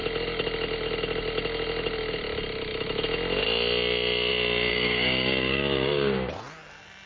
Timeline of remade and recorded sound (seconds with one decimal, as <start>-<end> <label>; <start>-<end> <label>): 0.0-4.7 recorded; 4.7-6.3 remade; 6.3-7.1 recorded